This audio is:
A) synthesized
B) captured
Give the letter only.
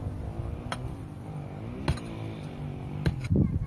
B